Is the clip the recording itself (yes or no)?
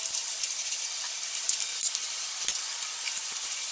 no